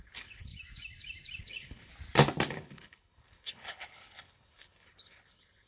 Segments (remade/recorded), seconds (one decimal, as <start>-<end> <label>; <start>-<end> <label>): 0.0-0.5 remade; 0.5-1.4 recorded; 1.4-1.9 remade; 1.9-2.5 recorded; 2.5-5.7 remade